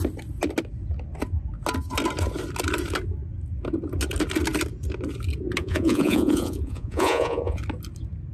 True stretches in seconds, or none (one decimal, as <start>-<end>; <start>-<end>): 0.0-5.6; 7.6-8.3